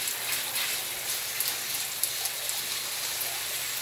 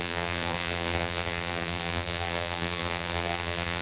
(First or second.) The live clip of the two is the first